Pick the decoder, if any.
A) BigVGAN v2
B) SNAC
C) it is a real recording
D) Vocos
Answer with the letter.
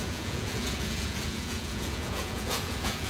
D